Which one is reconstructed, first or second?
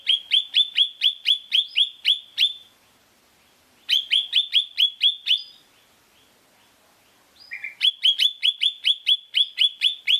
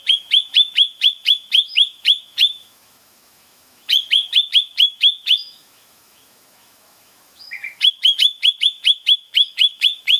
second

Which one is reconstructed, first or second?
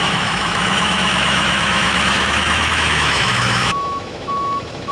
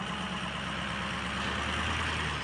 first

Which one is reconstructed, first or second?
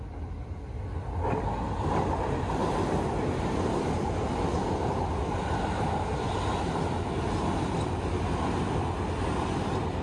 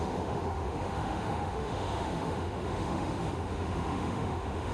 second